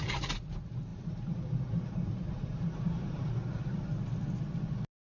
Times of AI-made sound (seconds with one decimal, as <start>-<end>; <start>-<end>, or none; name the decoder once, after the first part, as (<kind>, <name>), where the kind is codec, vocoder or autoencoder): 0.9-3.3 (vocoder, BigVGAN v2)